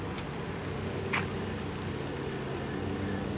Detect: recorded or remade recorded